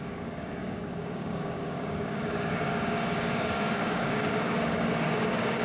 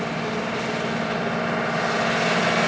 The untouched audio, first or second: second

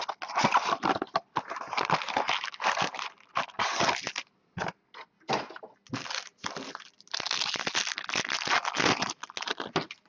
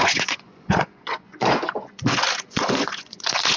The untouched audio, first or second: first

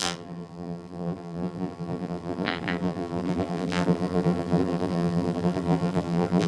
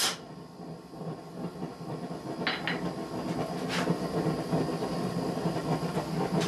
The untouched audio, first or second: second